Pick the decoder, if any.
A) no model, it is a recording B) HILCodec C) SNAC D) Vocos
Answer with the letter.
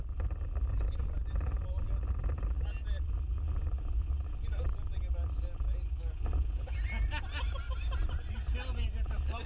A